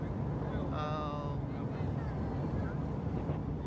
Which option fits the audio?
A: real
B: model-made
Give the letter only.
A